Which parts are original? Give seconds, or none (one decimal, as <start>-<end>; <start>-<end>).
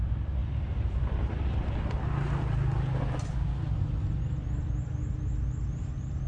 0.0-6.3